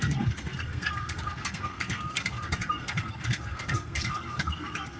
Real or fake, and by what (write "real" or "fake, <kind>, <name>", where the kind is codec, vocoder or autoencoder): fake, codec, SNAC